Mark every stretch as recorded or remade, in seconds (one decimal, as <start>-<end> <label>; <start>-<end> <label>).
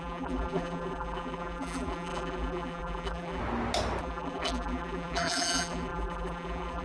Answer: 0.0-3.4 remade; 3.4-4.0 recorded; 4.0-6.8 remade